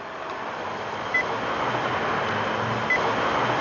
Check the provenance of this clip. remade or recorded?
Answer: recorded